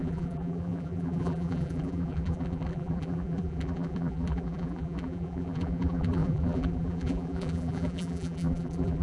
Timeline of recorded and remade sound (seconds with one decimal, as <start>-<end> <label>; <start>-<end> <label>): 0.0-9.0 remade